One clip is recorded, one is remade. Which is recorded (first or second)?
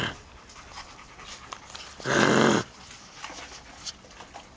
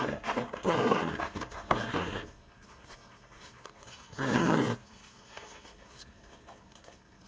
first